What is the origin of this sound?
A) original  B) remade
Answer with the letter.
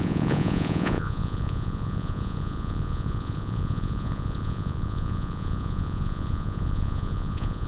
B